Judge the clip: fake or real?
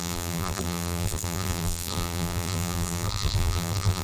fake